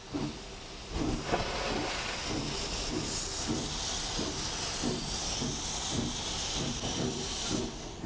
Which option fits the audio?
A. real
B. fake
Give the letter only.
A